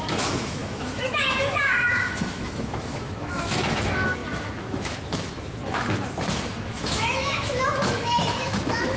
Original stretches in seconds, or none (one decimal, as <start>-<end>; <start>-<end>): none